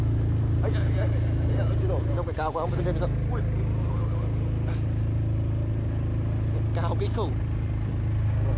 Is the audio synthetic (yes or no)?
no